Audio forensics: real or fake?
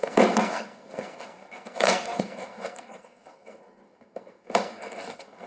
fake